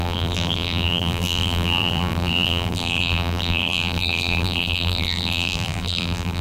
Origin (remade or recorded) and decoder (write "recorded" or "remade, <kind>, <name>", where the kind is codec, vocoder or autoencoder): remade, vocoder, BigVGAN v2